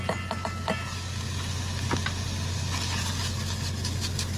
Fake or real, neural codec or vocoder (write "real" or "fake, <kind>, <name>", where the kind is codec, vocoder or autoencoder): real